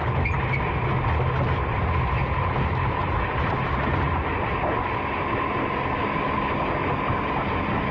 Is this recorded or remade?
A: recorded